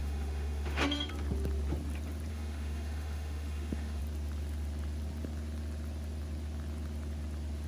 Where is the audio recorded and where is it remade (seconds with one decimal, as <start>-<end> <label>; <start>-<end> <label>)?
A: 0.0-1.1 remade; 1.1-2.3 recorded; 2.3-4.0 remade; 4.0-7.7 recorded